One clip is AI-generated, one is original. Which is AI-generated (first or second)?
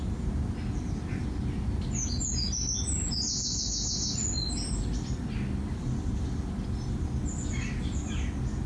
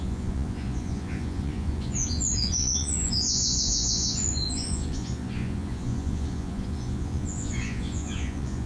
second